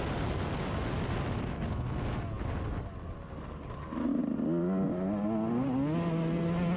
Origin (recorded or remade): recorded